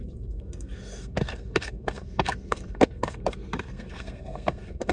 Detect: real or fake fake